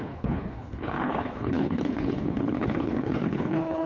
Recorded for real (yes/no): no